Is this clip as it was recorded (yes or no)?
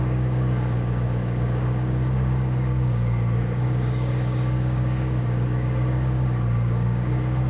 no